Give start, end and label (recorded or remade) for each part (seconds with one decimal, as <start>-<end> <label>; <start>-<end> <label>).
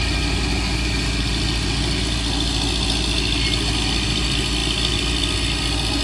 0.0-6.0 recorded